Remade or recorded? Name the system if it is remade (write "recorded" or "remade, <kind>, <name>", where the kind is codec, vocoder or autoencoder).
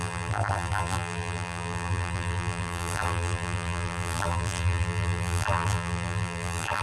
remade, vocoder, BigVGAN v2